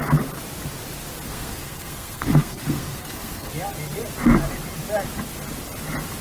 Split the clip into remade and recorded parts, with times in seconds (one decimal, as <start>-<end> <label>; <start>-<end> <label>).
0.0-1.3 recorded; 1.3-3.5 remade; 3.5-6.2 recorded